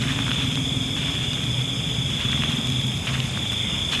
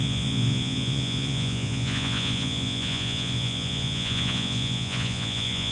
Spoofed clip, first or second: second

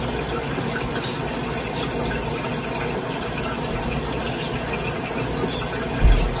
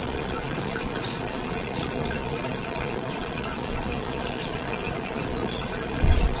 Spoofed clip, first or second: second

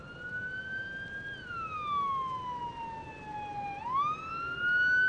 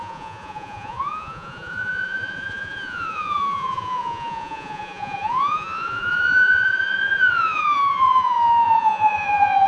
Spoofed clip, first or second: second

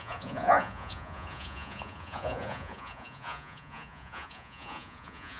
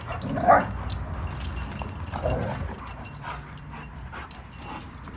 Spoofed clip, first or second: first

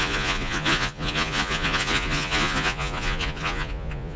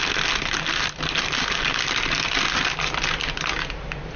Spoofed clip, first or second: first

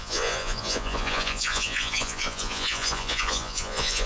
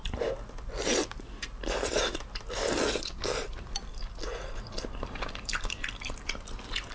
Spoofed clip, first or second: first